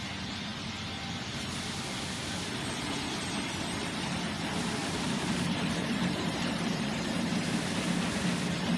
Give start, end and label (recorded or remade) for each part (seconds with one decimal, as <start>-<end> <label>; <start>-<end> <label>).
0.0-4.8 recorded; 4.8-7.0 remade; 7.0-8.8 recorded